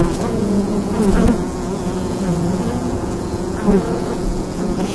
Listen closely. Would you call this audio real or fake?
fake